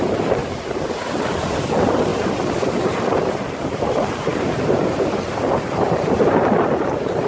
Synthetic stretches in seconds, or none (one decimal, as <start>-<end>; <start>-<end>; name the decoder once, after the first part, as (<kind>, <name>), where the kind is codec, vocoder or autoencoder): none